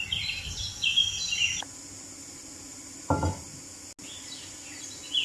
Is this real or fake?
real